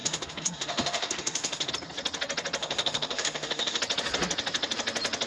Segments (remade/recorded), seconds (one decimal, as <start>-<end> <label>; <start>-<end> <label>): 0.0-1.7 remade; 1.7-2.6 recorded; 2.6-3.8 remade; 3.8-5.3 recorded